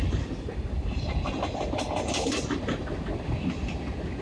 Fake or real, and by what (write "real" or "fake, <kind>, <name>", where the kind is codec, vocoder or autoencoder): real